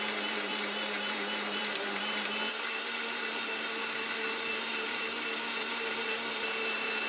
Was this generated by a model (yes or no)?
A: yes